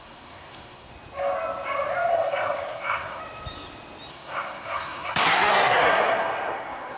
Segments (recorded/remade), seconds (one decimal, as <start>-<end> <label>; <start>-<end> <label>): 0.0-0.9 remade; 0.9-2.1 recorded; 2.1-3.2 remade; 3.2-4.1 recorded; 4.1-7.0 remade

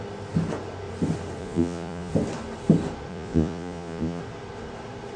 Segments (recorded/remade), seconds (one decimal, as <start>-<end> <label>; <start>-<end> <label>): 0.0-1.4 recorded; 1.4-2.1 remade; 2.1-3.1 recorded; 3.1-4.2 remade; 4.2-5.2 recorded

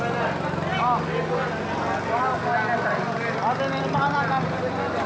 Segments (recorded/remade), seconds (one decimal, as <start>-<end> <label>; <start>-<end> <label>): 0.0-5.1 recorded

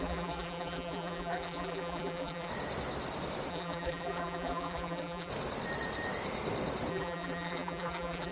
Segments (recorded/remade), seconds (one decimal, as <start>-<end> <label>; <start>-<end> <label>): 0.0-2.5 remade; 2.5-3.5 recorded; 3.5-5.3 remade; 5.3-6.9 recorded; 6.9-8.3 remade

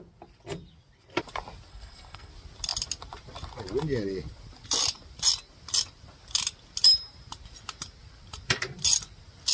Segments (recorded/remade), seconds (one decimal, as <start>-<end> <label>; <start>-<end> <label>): 0.0-1.7 recorded; 1.7-2.3 remade; 2.3-9.5 recorded

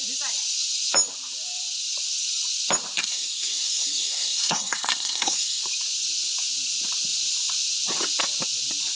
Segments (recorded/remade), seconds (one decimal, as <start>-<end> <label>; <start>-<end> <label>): 0.0-3.0 recorded; 3.0-5.6 remade; 5.6-8.9 recorded